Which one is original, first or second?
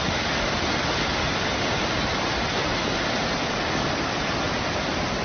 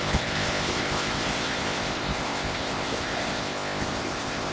first